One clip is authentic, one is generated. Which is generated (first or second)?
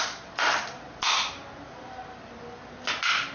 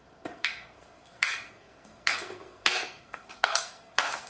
second